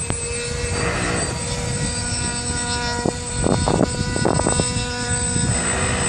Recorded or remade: recorded